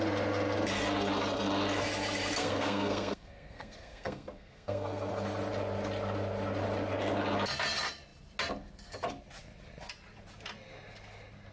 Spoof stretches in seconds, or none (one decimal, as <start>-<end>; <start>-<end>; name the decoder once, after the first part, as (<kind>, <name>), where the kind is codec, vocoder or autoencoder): 2.4-5.1 (codec, SNAC)